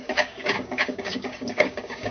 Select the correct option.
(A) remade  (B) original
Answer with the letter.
A